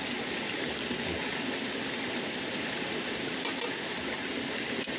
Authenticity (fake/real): real